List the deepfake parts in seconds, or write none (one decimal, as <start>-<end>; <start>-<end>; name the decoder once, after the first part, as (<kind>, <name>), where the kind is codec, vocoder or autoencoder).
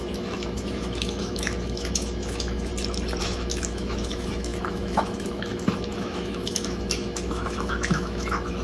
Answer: 0.0-2.7 (autoencoder, DAC-VAE); 3.2-8.6